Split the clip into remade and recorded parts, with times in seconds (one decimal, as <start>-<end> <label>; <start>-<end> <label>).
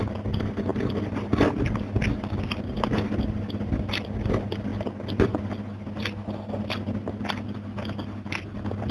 0.0-8.9 recorded